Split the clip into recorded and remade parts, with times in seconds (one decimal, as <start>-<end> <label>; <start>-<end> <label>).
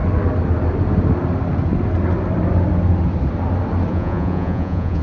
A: 0.0-3.9 recorded; 3.9-5.0 remade